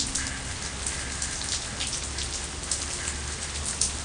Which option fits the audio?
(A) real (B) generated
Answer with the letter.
A